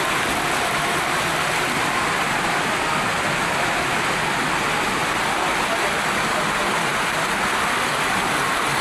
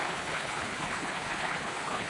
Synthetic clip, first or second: second